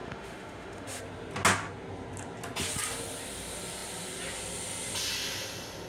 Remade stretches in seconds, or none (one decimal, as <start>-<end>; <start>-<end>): 0.0-1.0